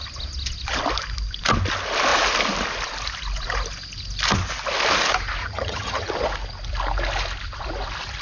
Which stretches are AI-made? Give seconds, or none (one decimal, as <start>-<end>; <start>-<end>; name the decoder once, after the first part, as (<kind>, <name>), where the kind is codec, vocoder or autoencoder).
5.4-6.1 (vocoder, HiFi-GAN)